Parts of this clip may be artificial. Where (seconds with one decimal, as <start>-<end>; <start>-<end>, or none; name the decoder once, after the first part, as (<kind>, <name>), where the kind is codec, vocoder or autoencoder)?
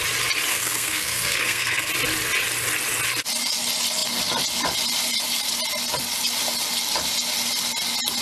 0.5-1.9 (codec, SNAC)